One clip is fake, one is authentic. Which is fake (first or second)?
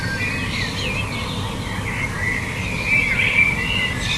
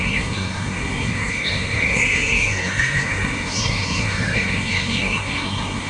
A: second